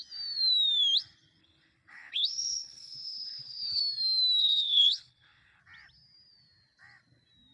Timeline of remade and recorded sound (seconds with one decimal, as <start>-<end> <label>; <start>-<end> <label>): 0.0-1.4 recorded; 1.4-3.8 remade; 3.8-4.4 recorded; 4.4-5.6 remade; 5.6-7.5 recorded